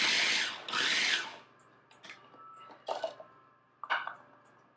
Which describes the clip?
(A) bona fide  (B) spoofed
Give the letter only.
A